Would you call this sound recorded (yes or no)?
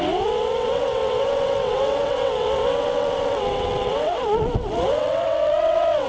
no